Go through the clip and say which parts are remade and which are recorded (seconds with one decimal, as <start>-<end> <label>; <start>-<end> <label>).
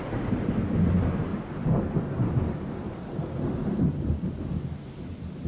0.0-5.5 remade